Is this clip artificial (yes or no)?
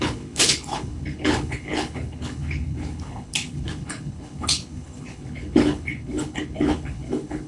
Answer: yes